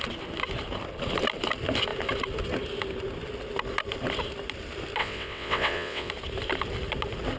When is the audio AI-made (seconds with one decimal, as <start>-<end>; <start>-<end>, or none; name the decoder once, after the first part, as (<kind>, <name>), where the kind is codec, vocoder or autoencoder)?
5.0-6.1 (vocoder, WaveNeXt)